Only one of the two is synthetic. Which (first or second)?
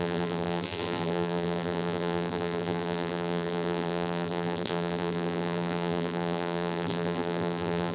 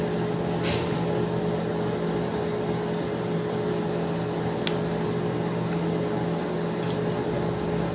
first